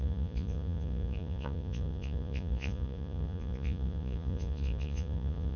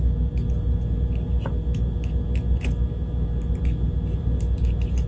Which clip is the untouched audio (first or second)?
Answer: second